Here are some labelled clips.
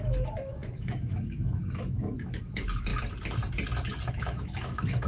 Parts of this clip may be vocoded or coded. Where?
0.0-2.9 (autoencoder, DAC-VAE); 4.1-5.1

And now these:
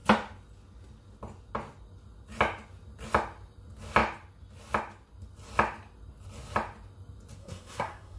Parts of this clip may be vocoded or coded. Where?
7.4-8.2 (codec, SNAC)

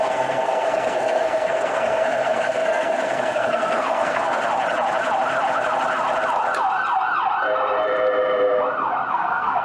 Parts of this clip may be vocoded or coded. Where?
0.0-4.4 (codec, SNAC); 9.1-9.6

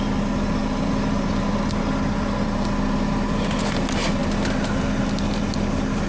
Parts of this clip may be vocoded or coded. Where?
none